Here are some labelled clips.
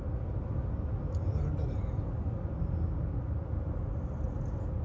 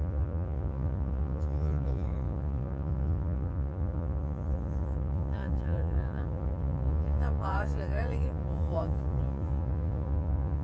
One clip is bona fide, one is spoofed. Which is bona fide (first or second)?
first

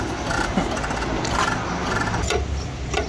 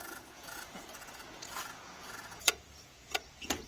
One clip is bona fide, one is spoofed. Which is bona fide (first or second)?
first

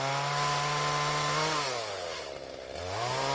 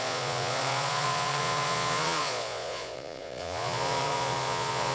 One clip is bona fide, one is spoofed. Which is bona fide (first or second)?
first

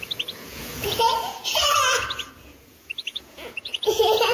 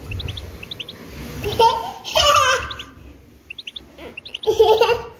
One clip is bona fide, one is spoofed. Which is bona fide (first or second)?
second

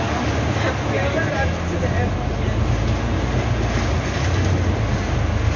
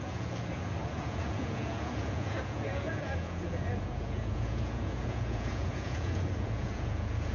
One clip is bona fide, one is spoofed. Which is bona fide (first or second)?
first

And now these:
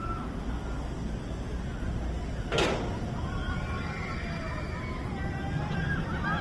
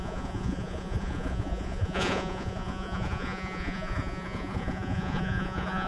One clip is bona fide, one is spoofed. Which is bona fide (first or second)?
first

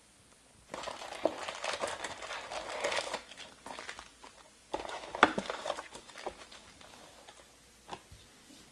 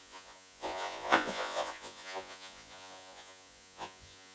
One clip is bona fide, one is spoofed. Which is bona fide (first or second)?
first